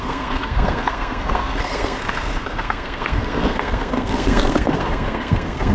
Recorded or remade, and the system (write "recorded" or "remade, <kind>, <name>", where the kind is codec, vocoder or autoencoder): remade, codec, SNAC